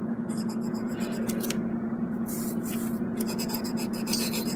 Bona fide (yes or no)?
no